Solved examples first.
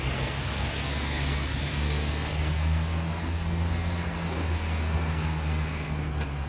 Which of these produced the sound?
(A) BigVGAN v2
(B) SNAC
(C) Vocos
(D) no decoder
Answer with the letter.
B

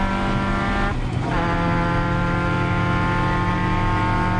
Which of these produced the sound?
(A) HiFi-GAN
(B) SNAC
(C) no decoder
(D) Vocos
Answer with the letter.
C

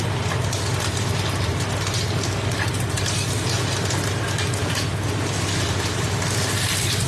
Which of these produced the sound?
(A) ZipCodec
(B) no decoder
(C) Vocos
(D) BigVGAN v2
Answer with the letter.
B